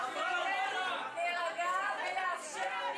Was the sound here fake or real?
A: real